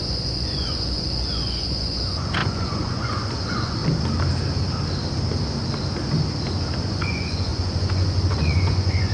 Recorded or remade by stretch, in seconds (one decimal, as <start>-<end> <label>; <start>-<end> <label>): 0.0-3.8 remade; 3.8-6.8 recorded; 6.8-9.1 remade